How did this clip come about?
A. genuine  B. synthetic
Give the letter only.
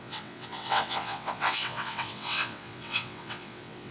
B